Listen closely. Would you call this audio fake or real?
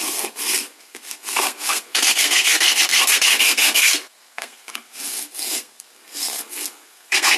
fake